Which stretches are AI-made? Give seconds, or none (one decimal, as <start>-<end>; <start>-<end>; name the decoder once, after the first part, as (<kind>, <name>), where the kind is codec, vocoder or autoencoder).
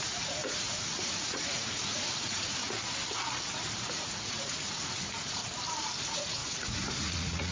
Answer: 0.0-2.6 (vocoder, Vocos); 3.9-5.4; 6.0-7.5